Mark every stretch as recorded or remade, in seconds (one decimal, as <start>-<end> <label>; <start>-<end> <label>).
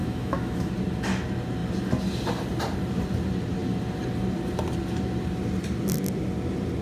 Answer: 0.0-0.7 remade; 0.7-6.8 recorded